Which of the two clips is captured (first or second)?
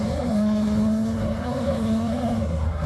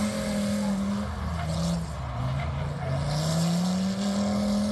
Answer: second